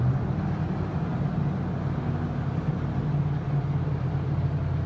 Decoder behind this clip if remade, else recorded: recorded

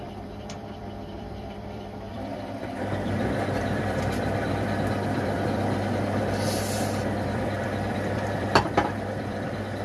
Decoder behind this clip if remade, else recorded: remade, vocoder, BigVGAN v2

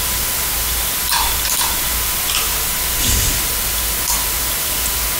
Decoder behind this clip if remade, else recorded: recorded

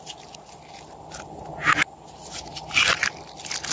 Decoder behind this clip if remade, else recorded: recorded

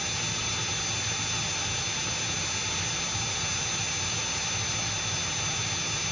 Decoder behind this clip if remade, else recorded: recorded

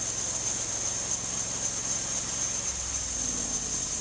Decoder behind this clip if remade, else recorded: recorded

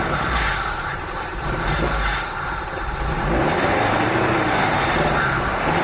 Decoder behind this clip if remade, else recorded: remade, vocoder, BigVGAN v2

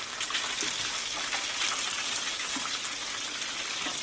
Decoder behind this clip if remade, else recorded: recorded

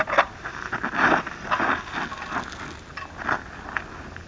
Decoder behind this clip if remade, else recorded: recorded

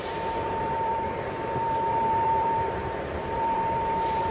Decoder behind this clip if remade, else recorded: remade, vocoder, BigVGAN v2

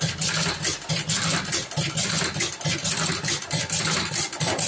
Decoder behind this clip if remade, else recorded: recorded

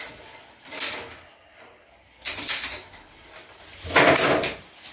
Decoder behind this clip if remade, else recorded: recorded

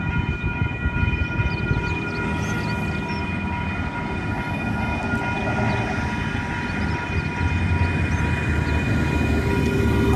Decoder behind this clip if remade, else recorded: recorded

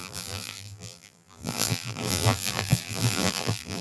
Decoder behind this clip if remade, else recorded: remade, vocoder, BigVGAN v2